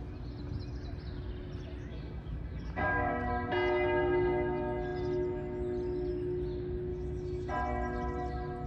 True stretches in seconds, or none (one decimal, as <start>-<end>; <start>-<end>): 0.0-1.9; 3.1-6.9; 7.5-8.7